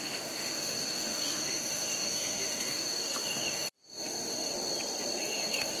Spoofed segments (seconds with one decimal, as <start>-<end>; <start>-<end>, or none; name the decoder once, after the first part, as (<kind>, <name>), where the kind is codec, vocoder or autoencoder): 0.0-4.5 (autoencoder, DAC-VAE); 5.2-5.8